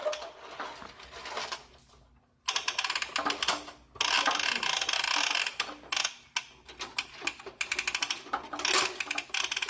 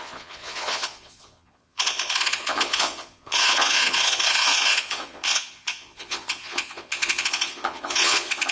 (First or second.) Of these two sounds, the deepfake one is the second